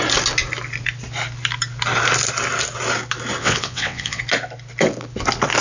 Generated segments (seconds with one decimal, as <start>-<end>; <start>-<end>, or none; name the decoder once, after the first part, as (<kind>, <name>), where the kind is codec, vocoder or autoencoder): 3.4-4.2 (vocoder, WaveNeXt)